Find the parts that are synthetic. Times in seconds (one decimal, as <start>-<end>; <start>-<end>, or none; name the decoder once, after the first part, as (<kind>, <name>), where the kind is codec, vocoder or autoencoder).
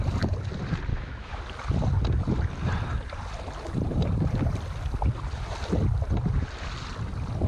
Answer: 0.9-1.4 (autoencoder, DAC-VAE)